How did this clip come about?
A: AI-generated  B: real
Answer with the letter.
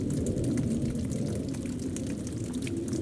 B